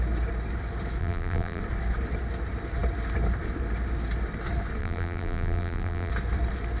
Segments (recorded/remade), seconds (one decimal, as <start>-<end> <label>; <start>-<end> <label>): 0.0-1.0 recorded; 1.0-1.6 remade; 1.6-4.8 recorded; 4.8-6.1 remade; 6.1-6.8 recorded